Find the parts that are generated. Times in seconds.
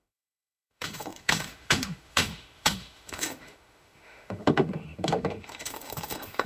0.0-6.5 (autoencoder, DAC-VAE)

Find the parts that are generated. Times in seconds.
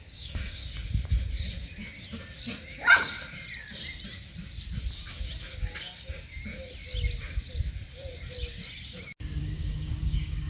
0.0-0.6 (codec, DAC); 5.8-6.4; 9.4-10.5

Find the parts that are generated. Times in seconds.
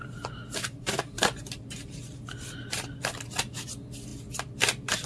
0.0-3.1 (vocoder, BigVGAN v2); 4.1-5.1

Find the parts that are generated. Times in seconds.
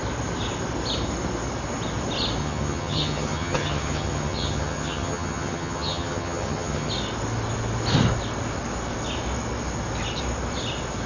2.4-6.9 (vocoder, HiFi-GAN)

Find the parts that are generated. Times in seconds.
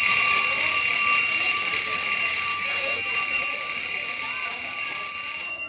2.5-3.1 (autoencoder, DAC-VAE)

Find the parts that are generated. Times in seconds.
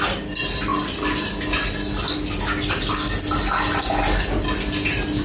none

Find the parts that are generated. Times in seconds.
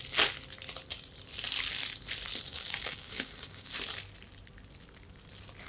2.5-3.7 (codec, DAC)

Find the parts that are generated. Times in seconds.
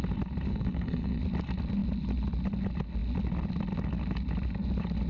0.5-1.2 (codec, SNAC)